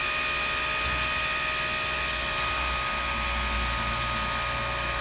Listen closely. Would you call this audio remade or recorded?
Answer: recorded